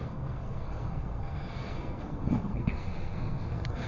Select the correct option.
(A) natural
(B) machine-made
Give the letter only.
B